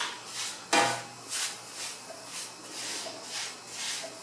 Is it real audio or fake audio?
real